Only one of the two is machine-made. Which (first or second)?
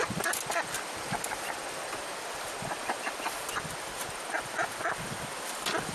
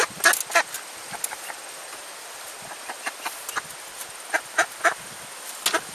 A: first